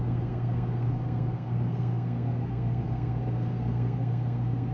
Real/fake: fake